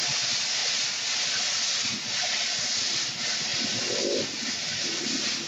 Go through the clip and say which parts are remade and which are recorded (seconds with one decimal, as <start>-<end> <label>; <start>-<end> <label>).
0.0-5.5 recorded